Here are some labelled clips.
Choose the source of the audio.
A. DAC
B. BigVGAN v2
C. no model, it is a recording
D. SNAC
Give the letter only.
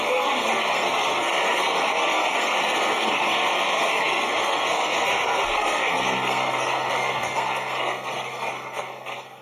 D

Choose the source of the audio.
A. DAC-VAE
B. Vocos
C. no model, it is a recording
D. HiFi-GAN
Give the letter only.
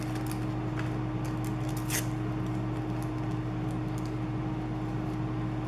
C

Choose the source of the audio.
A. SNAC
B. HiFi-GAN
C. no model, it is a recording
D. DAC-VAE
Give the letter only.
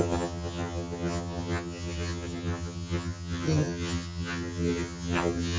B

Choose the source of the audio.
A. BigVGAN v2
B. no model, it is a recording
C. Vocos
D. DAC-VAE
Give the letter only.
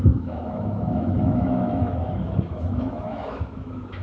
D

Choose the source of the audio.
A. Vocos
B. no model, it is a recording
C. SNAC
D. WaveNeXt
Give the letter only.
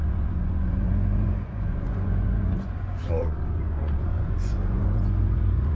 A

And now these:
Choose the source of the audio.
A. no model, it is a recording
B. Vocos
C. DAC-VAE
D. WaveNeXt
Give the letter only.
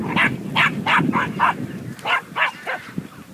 A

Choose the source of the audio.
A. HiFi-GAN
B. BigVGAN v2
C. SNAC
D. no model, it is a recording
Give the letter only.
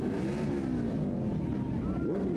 D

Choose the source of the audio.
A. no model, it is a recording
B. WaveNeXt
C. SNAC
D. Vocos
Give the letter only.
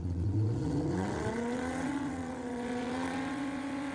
B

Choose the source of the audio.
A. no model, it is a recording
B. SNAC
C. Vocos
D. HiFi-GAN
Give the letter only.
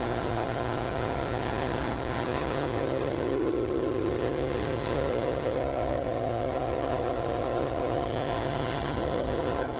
D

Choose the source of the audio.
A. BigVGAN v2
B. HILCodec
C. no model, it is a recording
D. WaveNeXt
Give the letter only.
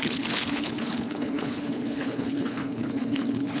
B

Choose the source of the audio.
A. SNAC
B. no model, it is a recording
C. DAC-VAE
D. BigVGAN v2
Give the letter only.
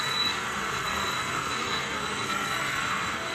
A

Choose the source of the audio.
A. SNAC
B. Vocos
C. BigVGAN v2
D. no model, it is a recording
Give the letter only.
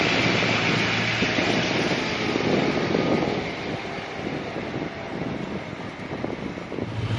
D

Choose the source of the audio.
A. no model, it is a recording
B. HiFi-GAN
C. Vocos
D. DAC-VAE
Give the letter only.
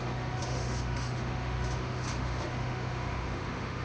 D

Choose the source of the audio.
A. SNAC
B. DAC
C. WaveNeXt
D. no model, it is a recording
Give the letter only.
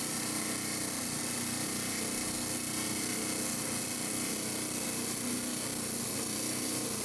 D